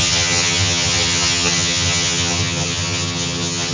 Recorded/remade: remade